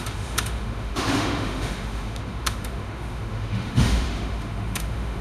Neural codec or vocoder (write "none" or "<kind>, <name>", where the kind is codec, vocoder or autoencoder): autoencoder, DAC-VAE